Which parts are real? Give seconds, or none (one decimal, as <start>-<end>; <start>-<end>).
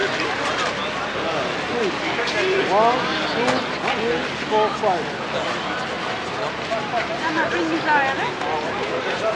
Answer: 0.5-9.4